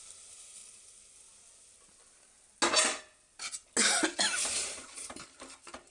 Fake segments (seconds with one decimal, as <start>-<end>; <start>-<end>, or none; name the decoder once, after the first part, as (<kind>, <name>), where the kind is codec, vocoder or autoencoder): 0.0-0.6 (vocoder, BigVGAN v2); 4.0-5.9